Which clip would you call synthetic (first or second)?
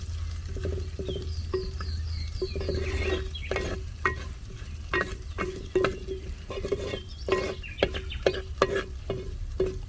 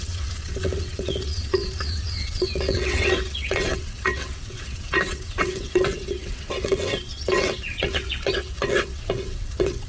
second